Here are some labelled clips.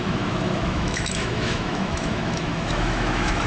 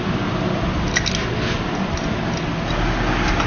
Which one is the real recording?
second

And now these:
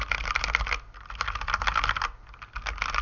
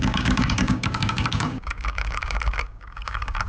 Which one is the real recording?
first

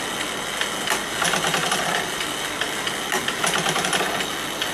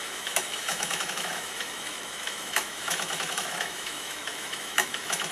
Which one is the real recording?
first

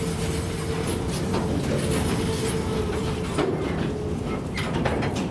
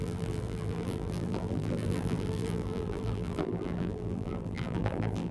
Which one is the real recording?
first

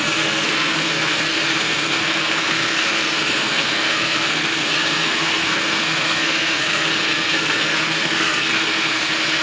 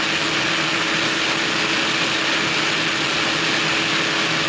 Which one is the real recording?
second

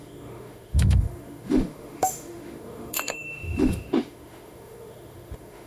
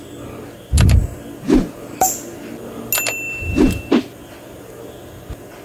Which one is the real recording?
second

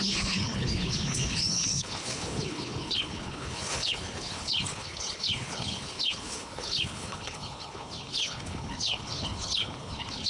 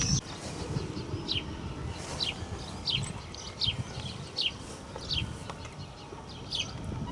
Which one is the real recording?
second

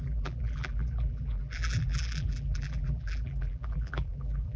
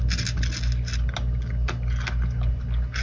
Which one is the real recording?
second